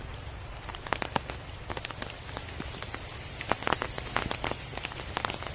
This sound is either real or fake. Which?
fake